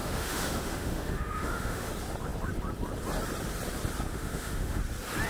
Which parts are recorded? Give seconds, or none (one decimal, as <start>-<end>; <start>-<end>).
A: 1.9-4.1; 4.8-5.3